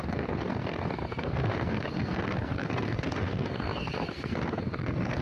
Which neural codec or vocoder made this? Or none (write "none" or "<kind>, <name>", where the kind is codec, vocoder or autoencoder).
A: codec, SNAC